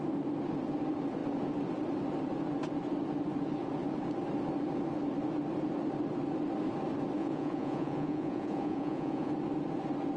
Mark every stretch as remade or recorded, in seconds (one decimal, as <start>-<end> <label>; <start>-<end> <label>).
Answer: 0.0-7.2 recorded; 7.2-9.3 remade; 9.3-10.2 recorded